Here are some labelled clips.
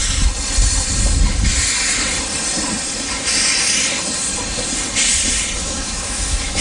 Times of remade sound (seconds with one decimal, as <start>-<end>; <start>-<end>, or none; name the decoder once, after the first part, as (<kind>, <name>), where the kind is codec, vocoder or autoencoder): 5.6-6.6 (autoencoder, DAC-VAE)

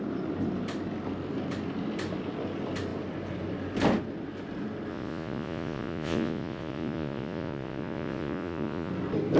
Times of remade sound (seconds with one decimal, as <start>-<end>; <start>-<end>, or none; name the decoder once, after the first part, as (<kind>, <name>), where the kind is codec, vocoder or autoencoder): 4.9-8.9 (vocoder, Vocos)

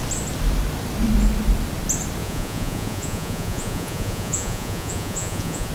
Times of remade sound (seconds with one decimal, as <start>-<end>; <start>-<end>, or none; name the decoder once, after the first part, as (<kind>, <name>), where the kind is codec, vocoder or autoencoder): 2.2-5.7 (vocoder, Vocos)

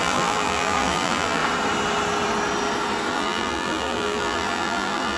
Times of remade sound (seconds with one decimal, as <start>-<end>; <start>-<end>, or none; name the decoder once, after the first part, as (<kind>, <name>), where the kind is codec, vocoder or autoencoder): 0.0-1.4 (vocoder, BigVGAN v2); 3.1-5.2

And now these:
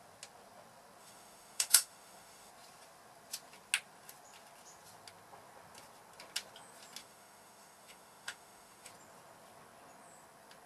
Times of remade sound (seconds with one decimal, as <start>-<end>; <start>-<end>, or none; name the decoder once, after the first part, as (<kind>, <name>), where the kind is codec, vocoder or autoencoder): 1.0-2.5 (autoencoder, DAC-VAE); 7.0-8.9

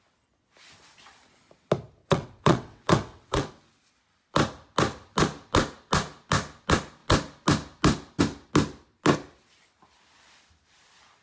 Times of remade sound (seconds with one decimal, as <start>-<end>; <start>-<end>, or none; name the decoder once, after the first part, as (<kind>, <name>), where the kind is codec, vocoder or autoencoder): 2.0-3.5 (vocoder, WaveNeXt)

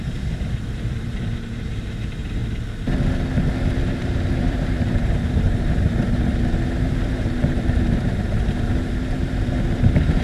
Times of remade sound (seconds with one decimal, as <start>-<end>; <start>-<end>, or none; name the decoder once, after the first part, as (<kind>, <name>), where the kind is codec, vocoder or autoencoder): 0.0-2.4 (vocoder, BigVGAN v2); 3.8-10.2

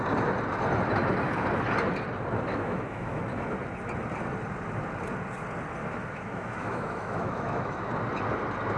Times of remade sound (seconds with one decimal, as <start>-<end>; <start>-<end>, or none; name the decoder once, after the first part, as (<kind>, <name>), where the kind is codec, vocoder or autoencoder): 2.5-3.2 (autoencoder, DAC-VAE); 5.8-7.9